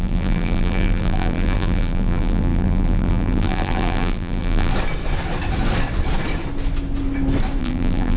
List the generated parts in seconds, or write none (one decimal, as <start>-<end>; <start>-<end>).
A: 0.0-4.7; 7.6-8.2